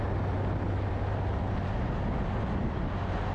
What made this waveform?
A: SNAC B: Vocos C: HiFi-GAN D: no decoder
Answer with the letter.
D